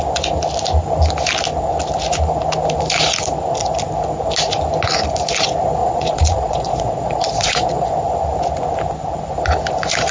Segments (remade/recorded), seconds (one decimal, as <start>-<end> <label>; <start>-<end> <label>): 0.0-5.8 recorded; 5.8-7.9 remade; 7.9-10.1 recorded